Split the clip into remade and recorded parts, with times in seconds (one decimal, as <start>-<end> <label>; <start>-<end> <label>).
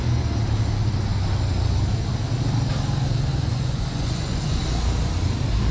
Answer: 0.0-3.3 recorded; 3.3-4.6 remade; 4.6-5.7 recorded